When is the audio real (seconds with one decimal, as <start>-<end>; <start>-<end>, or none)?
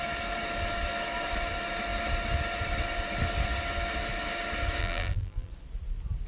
0.0-4.8; 5.5-6.3